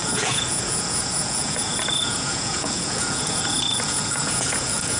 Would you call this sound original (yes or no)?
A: no